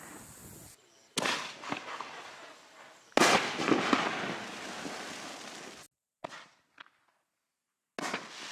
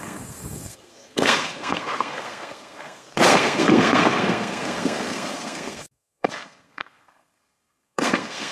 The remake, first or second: second